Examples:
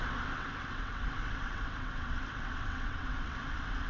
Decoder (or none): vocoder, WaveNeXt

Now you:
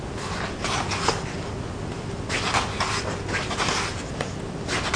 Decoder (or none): none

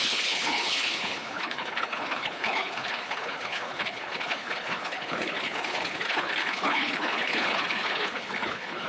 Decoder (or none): codec, HILCodec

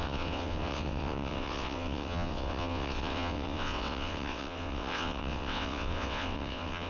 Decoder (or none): vocoder, WaveNeXt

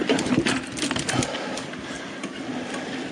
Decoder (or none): none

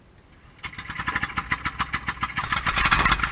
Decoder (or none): none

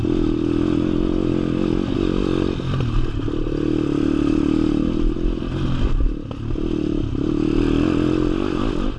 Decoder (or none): none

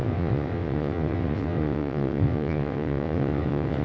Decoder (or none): vocoder, WaveNeXt